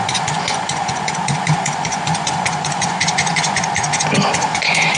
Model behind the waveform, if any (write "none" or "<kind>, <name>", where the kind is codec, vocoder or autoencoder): vocoder, Vocos